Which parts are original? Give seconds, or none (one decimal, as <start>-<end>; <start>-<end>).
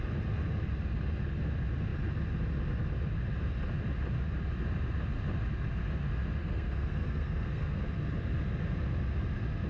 0.0-6.4; 7.8-9.7